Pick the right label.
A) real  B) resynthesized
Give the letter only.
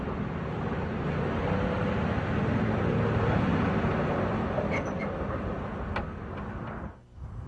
A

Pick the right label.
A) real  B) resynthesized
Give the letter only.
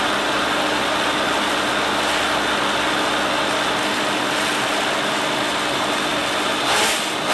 A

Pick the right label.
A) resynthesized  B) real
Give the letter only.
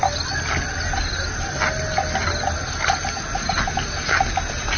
B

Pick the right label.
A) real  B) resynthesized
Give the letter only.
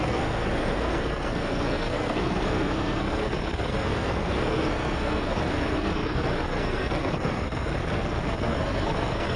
B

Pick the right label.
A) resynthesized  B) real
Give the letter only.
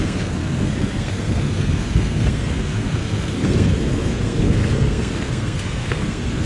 A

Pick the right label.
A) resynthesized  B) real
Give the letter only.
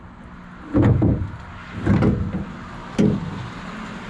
B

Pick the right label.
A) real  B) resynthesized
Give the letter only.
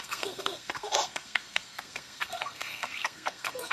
B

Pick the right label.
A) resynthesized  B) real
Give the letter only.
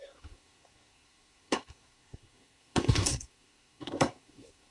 A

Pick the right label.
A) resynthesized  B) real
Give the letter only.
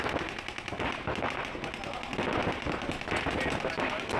B